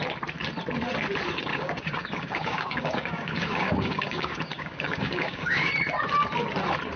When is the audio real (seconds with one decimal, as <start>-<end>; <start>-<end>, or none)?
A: 0.0-1.5; 5.7-7.0